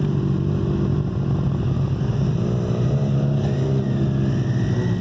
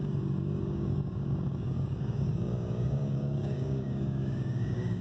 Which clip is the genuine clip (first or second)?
first